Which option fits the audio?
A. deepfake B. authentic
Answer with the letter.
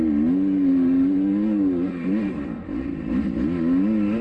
B